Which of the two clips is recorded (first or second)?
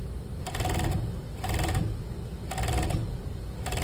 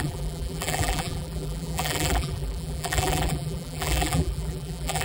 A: first